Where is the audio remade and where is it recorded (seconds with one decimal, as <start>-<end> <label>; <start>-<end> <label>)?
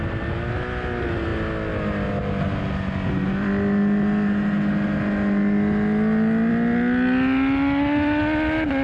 0.0-8.8 recorded